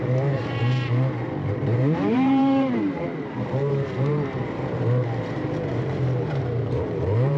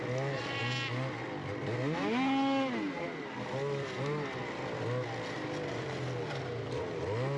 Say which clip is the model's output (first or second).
first